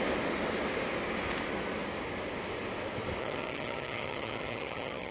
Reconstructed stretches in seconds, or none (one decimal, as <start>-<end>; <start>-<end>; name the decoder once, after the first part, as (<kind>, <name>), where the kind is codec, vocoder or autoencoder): 3.2-5.1 (vocoder, HiFi-GAN)